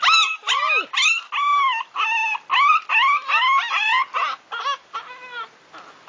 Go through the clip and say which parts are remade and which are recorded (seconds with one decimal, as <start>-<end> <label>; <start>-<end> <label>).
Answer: 0.0-6.1 recorded